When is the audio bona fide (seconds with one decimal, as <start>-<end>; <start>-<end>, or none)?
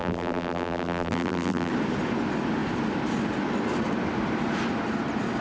1.7-5.4